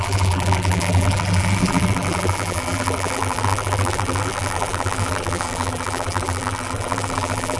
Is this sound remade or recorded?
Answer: remade